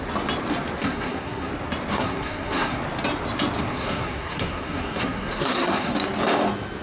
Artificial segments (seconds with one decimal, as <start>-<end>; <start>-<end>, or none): 0.8-1.5; 1.9-2.8; 3.7-5.9